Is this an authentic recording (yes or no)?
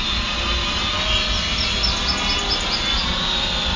yes